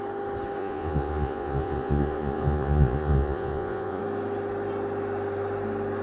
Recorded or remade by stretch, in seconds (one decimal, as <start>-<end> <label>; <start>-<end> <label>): 0.0-0.6 recorded; 0.6-4.0 remade; 4.0-6.0 recorded